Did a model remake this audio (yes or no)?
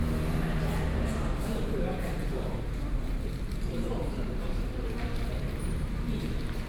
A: yes